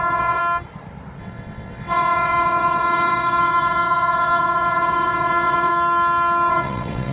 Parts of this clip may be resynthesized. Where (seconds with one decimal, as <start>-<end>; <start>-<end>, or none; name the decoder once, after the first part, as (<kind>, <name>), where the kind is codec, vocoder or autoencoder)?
0.0-0.4 (vocoder, WaveNeXt); 1.2-5.7; 6.5-7.1

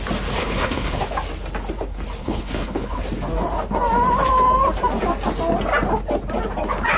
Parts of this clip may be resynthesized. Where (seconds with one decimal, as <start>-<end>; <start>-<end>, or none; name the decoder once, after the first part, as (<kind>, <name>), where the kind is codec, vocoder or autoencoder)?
0.4-1.0 (codec, HILCodec); 2.2-3.0

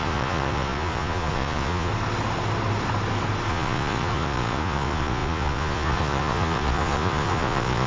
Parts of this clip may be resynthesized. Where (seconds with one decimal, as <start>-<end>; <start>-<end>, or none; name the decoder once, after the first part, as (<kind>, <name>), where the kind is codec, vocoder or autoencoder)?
0.0-1.9 (vocoder, Vocos); 3.5-7.9